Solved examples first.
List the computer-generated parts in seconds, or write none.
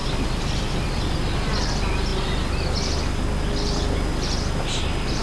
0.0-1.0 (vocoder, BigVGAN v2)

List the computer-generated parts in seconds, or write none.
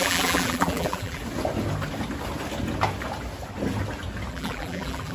0.0-1.2 (vocoder, BigVGAN v2); 4.3-5.1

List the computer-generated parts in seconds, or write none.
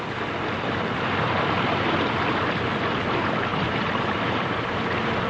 3.5-4.6 (vocoder, BigVGAN v2)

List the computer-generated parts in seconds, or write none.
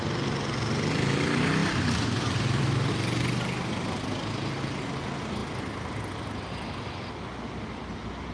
1.6-2.9 (vocoder, BigVGAN v2); 5.4-6.0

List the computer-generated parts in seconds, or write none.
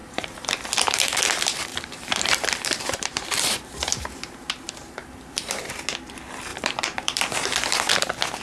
0.0-1.2 (vocoder, BigVGAN v2); 1.7-5.7; 6.5-7.9